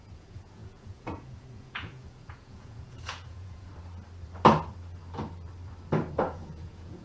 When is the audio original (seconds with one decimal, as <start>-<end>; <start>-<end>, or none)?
3.7-6.2